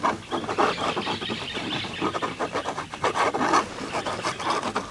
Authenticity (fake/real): real